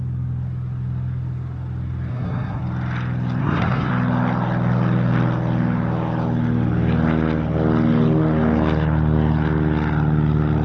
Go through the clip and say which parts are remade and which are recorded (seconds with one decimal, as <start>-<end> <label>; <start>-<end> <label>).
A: 0.0-2.1 recorded; 2.1-2.6 remade; 2.6-3.4 recorded; 3.4-3.9 remade; 3.9-10.6 recorded